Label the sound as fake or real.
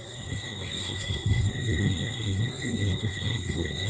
fake